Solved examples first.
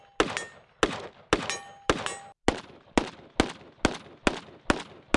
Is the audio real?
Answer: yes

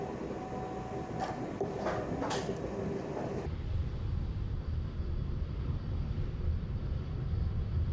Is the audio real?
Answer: yes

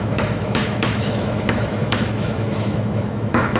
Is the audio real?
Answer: no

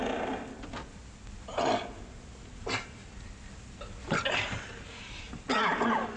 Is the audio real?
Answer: yes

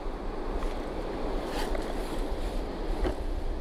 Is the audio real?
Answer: yes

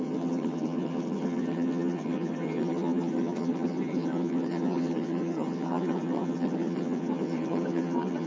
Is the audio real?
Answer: no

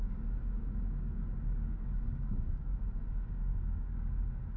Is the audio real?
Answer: no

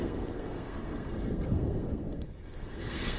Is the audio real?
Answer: no